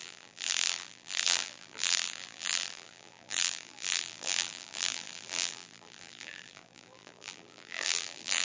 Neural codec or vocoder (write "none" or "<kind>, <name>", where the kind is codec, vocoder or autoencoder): vocoder, BigVGAN v2